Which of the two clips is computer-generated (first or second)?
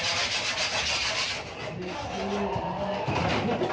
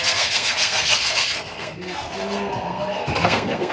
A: second